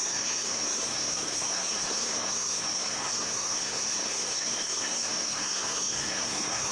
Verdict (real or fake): fake